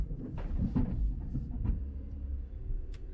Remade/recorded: remade